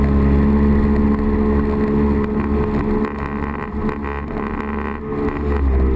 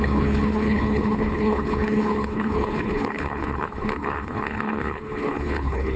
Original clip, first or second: first